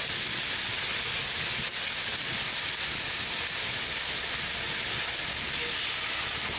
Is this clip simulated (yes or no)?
no